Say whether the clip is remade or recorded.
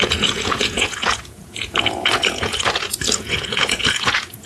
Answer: remade